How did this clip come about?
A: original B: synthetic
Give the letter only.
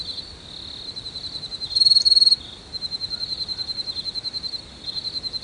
A